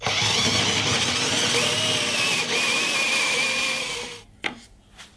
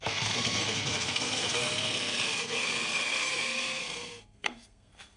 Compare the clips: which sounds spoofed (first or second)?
second